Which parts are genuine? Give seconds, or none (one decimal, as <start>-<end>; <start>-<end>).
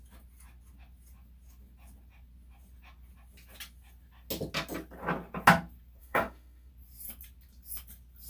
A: 0.0-6.0; 6.7-8.3